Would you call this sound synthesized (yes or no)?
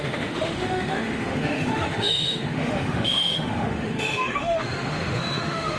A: yes